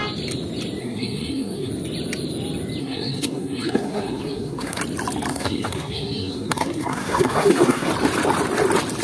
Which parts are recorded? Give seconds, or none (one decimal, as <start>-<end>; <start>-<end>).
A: 0.0-0.8; 1.7-2.8; 4.8-5.3; 7.9-9.0